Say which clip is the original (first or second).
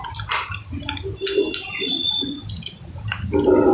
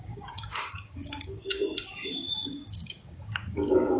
first